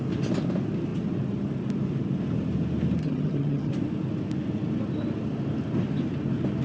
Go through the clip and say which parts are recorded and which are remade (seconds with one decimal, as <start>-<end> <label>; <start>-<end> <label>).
0.0-3.0 recorded; 3.0-3.7 remade; 3.7-6.6 recorded

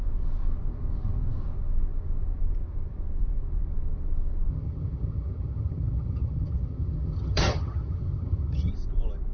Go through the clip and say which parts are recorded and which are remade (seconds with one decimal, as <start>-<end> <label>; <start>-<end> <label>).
0.0-4.5 recorded; 4.5-8.7 remade; 8.7-9.3 recorded

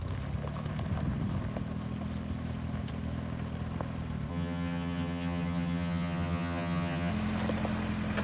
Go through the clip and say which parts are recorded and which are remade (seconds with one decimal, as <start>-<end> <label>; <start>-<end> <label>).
0.0-4.3 recorded; 4.3-7.1 remade; 7.1-8.2 recorded